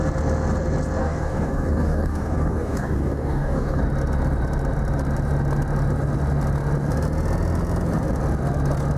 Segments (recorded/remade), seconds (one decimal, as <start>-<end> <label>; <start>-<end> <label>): 0.0-1.0 recorded; 1.0-3.8 remade; 3.8-9.0 recorded